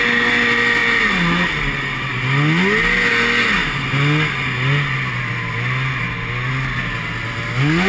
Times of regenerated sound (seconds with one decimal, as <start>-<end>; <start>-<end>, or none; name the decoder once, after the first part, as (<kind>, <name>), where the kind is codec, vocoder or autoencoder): none